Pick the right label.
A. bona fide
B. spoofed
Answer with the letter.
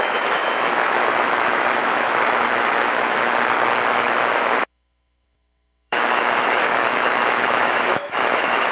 B